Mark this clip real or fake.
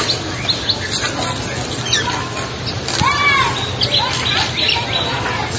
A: real